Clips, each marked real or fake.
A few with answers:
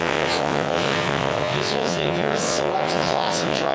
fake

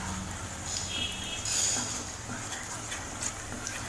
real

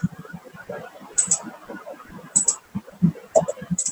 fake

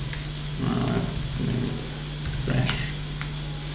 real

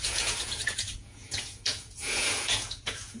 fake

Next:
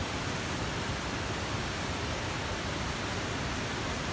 real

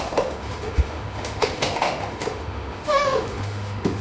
fake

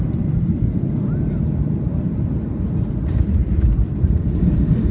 real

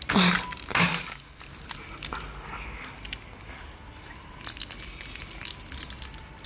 real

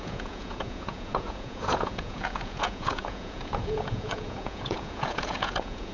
fake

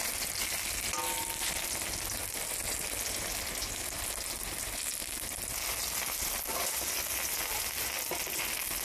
real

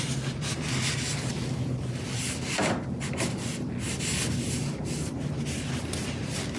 real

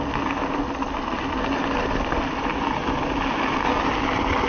real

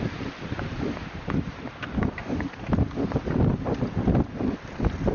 fake